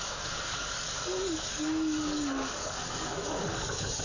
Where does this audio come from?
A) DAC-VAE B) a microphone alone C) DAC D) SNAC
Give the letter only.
C